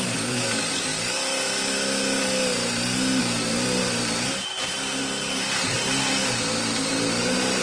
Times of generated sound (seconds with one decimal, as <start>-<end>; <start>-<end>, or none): 0.0-0.9; 3.2-7.6